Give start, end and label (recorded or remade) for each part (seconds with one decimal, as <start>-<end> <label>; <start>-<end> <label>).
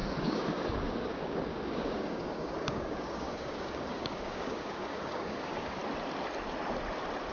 0.0-5.8 remade; 5.8-7.3 recorded